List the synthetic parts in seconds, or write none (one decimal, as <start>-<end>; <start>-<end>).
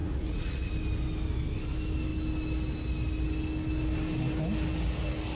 0.0-0.7